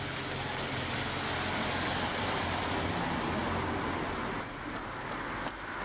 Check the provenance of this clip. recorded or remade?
recorded